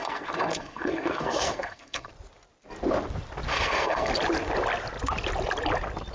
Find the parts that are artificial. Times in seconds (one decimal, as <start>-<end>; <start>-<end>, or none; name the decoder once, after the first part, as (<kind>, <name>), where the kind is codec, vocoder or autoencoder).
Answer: 0.0-2.1 (codec, SNAC); 3.5-4.1